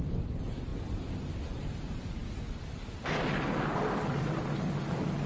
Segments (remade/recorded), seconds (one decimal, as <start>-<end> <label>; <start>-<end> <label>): 0.0-5.3 recorded